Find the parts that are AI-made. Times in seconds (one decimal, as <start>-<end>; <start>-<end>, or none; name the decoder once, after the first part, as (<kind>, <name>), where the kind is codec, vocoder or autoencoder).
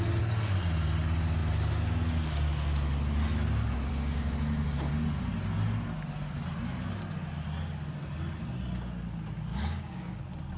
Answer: 9.5-10.2 (codec, DAC)